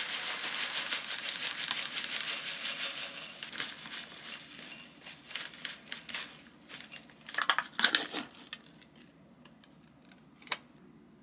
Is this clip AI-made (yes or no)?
no